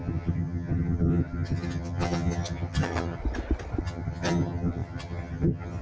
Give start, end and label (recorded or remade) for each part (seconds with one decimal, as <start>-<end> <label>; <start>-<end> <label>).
0.0-3.2 remade; 3.2-3.8 recorded; 3.8-5.8 remade